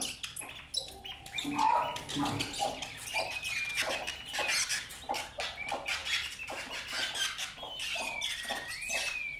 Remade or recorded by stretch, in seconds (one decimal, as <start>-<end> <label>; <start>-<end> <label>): 0.0-9.4 recorded